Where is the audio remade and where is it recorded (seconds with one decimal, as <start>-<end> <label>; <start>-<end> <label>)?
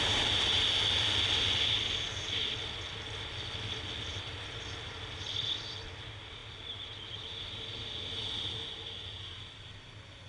0.0-10.3 recorded